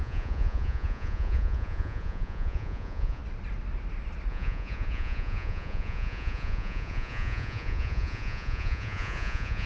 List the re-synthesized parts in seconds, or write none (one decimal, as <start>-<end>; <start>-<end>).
0.0-3.2; 4.3-9.7